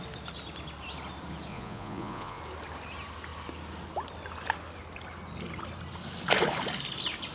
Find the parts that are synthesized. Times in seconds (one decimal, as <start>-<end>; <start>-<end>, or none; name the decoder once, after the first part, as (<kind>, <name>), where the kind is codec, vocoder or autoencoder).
1.5-2.4 (vocoder, Vocos)